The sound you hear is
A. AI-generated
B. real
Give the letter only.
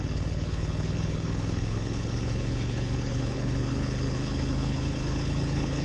A